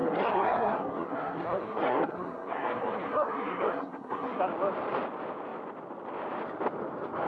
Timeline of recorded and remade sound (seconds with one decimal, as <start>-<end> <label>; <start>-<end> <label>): 0.0-4.4 remade; 4.4-7.3 recorded